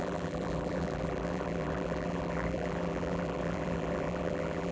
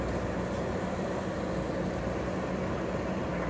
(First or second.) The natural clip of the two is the second